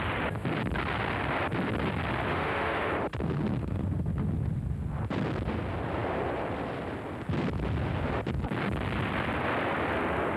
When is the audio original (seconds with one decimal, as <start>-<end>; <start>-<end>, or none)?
0.0-2.3; 2.9-3.6; 4.1-10.4